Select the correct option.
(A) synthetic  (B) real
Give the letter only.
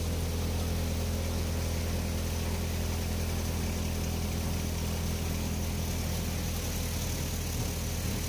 B